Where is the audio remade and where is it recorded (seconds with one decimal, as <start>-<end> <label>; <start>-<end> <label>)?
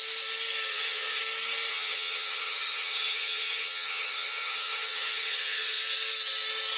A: 0.0-0.7 recorded; 0.7-1.2 remade; 1.2-1.7 recorded; 1.7-5.8 remade; 5.8-6.8 recorded